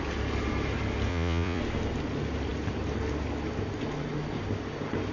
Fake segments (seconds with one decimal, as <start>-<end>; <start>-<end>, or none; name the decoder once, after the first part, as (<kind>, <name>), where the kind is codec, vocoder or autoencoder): 1.1-1.6 (vocoder, Vocos)